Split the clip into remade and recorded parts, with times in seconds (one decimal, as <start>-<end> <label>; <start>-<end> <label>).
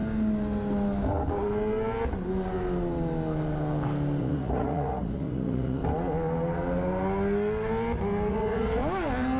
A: 0.0-4.2 recorded; 4.2-5.8 remade; 5.8-8.3 recorded; 8.3-8.8 remade; 8.8-9.4 recorded